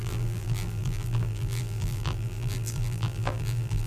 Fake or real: fake